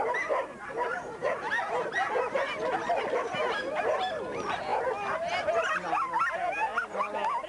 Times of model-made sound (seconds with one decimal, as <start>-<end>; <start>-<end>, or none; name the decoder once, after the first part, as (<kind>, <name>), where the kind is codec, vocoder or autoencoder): none